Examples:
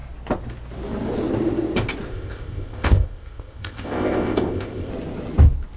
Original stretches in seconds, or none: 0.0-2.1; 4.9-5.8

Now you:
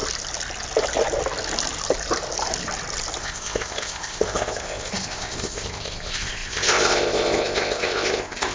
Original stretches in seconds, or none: 0.0-3.2

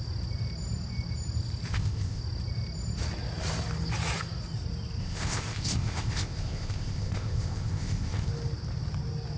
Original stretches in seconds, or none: 0.0-1.7; 2.2-5.0; 8.3-9.4